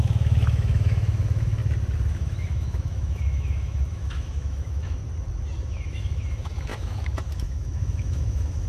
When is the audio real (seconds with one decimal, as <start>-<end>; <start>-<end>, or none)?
1.6-2.1; 5.0-5.7